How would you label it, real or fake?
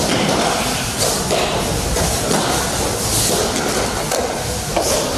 real